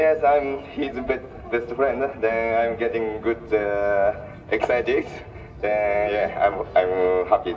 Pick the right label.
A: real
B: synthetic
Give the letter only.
A